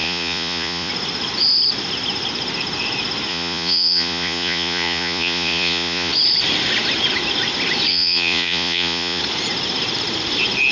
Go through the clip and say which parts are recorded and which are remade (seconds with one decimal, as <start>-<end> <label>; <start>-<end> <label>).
0.0-0.9 remade; 0.9-3.3 recorded; 3.3-6.1 remade; 6.1-7.9 recorded; 7.9-9.2 remade; 9.2-10.7 recorded